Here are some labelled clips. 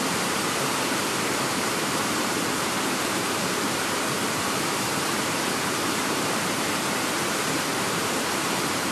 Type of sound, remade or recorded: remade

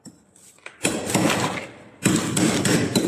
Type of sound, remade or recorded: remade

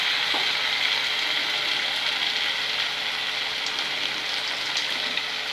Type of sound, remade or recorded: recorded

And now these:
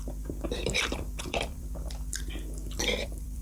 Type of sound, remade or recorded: remade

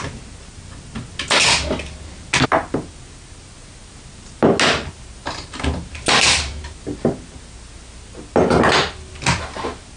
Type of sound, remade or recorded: recorded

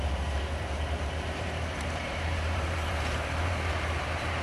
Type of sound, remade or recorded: remade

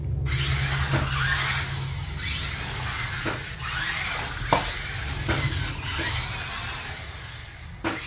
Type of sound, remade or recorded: recorded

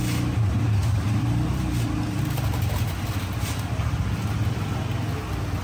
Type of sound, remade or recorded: recorded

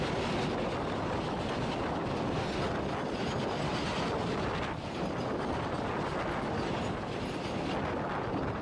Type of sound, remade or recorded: recorded